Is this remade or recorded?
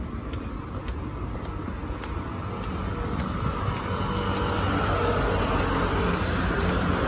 recorded